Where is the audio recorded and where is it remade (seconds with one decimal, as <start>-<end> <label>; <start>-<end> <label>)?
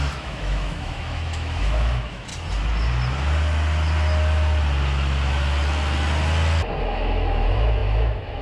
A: 0.0-2.3 remade; 2.3-6.8 recorded; 6.8-8.4 remade